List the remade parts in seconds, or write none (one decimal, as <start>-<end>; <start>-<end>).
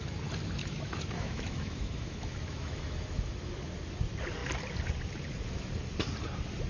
0.6-3.3